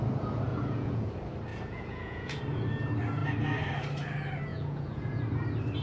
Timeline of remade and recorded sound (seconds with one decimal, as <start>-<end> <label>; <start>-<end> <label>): 0.0-0.5 recorded; 0.5-1.1 remade; 1.1-1.5 recorded; 1.5-2.4 remade; 2.4-4.5 recorded; 4.5-5.2 remade; 5.2-5.8 recorded

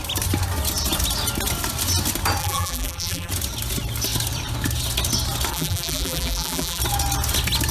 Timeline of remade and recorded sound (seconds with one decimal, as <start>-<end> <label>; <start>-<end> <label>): 0.0-2.4 recorded; 2.4-3.3 remade; 3.3-5.5 recorded; 5.5-6.8 remade; 6.8-7.7 recorded